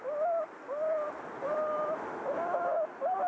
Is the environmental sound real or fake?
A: real